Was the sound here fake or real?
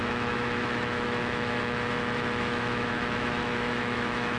fake